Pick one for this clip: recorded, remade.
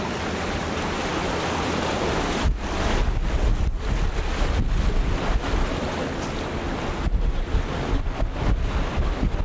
recorded